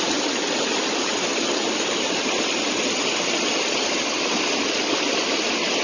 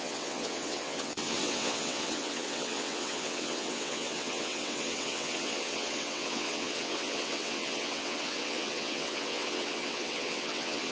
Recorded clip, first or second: first